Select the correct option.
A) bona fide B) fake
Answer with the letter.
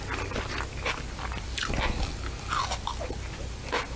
A